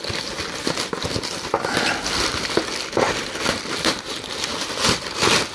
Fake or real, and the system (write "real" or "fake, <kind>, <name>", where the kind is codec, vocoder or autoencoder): real